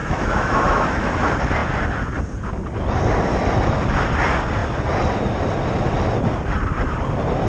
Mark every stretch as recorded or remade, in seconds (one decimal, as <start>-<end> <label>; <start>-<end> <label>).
0.0-1.1 remade; 1.1-7.5 recorded